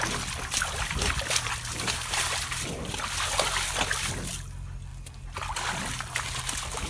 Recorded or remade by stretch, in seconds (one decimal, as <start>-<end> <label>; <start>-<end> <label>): 0.0-6.9 recorded